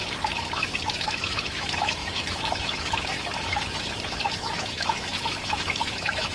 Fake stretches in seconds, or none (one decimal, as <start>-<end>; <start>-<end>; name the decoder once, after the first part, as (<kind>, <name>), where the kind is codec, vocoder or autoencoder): 0.0-6.3 (autoencoder, DAC-VAE)